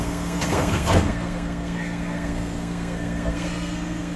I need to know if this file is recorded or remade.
remade